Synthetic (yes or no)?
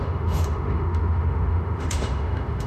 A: yes